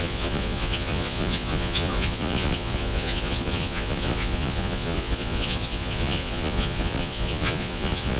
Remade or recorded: remade